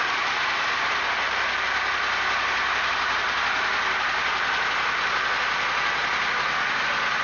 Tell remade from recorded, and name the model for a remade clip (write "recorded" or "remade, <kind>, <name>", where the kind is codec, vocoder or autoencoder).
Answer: recorded